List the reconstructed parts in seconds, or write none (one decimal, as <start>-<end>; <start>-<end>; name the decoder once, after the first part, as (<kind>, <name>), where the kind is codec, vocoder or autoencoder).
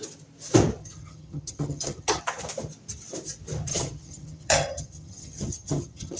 0.8-2.2 (vocoder, HiFi-GAN); 3.7-6.2